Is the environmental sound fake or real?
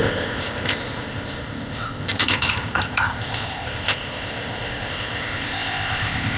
fake